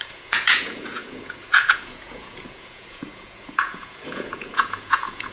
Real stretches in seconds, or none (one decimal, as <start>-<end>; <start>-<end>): none